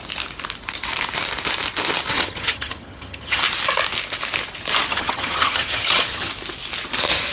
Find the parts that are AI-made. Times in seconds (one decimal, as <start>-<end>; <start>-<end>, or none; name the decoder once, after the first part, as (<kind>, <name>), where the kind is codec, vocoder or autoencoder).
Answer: 2.1-3.4 (vocoder, HiFi-GAN); 4.9-6.3